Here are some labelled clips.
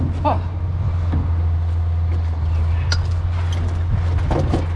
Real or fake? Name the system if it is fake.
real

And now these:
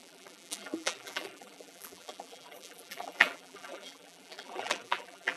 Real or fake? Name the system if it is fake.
fake, vocoder, BigVGAN v2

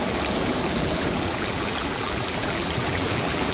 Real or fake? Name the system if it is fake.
fake, vocoder, BigVGAN v2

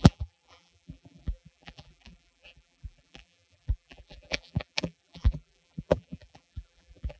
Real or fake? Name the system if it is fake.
fake, vocoder, BigVGAN v2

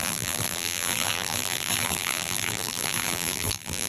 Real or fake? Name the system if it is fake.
fake, vocoder, BigVGAN v2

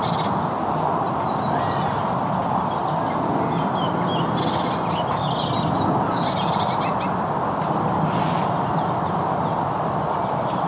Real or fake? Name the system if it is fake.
real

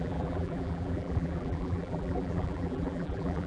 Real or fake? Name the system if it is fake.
fake, vocoder, BigVGAN v2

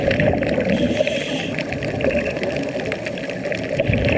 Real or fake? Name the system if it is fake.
real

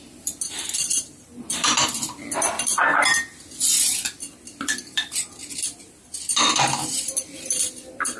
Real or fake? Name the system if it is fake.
fake, vocoder, BigVGAN v2